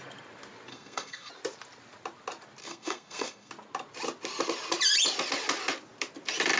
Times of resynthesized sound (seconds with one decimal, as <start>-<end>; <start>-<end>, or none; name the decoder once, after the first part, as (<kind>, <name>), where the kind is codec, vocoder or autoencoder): 0.7-1.3 (codec, SNAC); 2.6-3.5